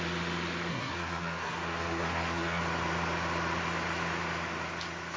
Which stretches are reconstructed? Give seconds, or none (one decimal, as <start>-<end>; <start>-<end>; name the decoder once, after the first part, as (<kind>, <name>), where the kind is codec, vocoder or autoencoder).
0.7-2.6 (codec, SNAC)

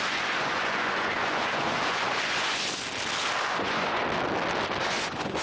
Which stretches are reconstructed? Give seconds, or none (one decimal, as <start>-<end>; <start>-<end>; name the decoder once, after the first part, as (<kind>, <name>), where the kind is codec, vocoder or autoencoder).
0.0-2.8 (vocoder, Vocos); 3.4-4.0; 4.8-5.4